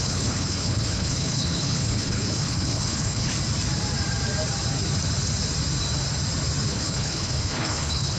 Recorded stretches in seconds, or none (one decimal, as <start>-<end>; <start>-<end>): 3.3-6.7